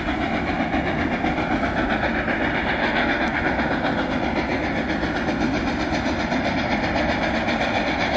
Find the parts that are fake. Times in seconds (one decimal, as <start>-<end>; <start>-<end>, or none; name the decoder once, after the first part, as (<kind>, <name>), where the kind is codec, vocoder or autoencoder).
2.8-3.4 (codec, SNAC)